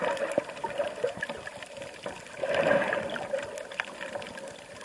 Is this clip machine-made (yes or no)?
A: no